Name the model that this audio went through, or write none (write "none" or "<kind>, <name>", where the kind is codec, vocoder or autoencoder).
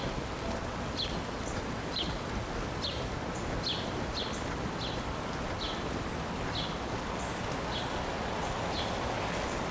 none